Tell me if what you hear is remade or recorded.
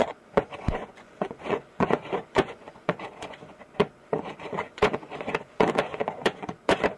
remade